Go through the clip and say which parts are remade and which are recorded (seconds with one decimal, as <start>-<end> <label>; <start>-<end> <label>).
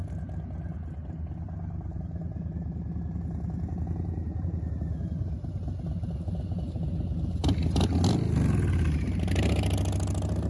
0.0-10.5 recorded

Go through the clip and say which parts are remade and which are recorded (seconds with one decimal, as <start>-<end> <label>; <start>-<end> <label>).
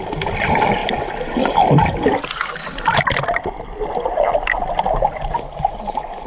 0.0-6.3 recorded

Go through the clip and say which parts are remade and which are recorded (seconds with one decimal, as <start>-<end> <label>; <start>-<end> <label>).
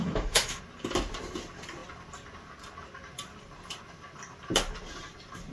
0.0-0.6 remade; 0.6-5.5 recorded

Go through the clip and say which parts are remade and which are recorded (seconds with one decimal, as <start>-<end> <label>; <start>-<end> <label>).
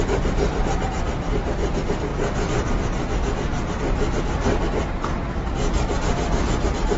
0.0-7.0 recorded